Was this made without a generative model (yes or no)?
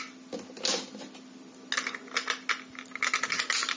yes